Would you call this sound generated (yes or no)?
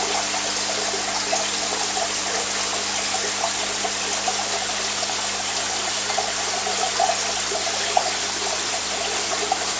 no